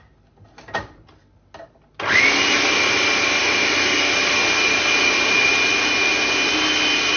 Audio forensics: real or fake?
real